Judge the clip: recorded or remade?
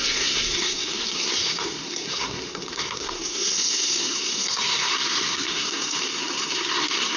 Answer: remade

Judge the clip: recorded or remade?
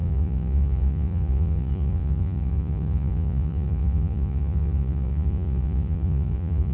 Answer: remade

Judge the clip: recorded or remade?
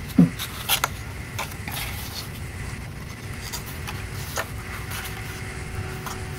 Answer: recorded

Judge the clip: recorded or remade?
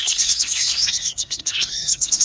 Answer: remade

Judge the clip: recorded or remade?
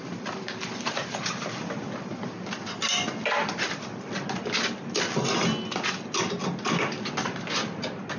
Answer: recorded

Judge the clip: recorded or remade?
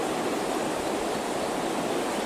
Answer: recorded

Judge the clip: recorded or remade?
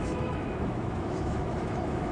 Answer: remade